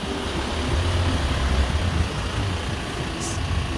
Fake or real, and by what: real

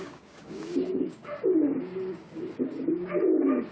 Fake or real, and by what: fake, codec, DAC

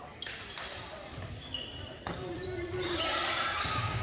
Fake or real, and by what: fake, vocoder, BigVGAN v2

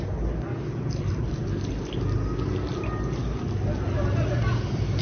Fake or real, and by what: real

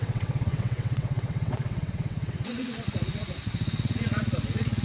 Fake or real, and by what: fake, vocoder, WaveNeXt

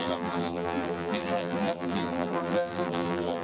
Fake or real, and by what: fake, vocoder, BigVGAN v2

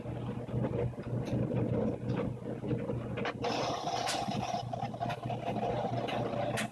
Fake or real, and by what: real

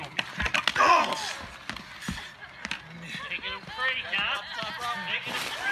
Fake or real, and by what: real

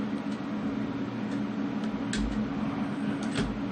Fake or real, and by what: real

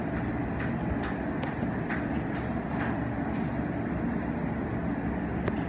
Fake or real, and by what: real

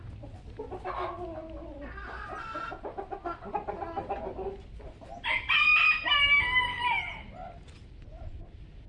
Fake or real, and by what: real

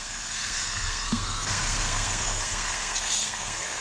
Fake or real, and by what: fake, codec, SNAC